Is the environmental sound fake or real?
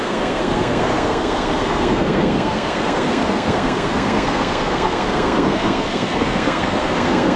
fake